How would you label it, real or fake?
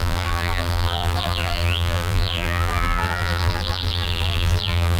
fake